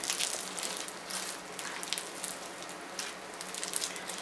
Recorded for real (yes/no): yes